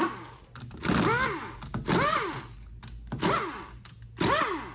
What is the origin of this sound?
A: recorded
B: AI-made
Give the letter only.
A